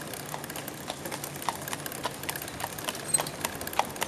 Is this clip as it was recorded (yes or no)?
yes